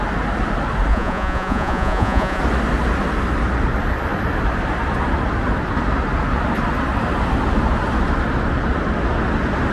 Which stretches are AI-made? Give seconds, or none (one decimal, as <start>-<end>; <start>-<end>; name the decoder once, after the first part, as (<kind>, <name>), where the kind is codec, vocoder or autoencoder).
0.9-2.4 (vocoder, Vocos)